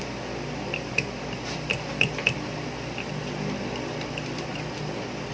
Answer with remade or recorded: remade